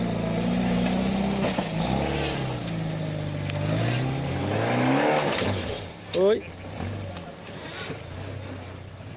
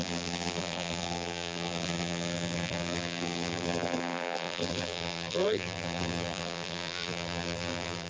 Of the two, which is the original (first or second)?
first